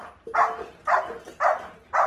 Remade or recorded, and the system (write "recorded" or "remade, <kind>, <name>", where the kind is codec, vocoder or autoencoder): recorded